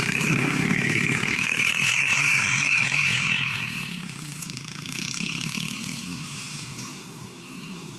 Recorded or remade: remade